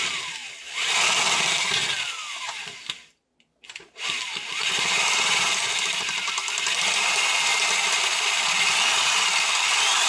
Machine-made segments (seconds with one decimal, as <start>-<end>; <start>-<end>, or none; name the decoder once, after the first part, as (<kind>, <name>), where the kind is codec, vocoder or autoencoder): 0.0-0.4 (vocoder, BigVGAN v2); 3.6-7.5; 8.9-10.1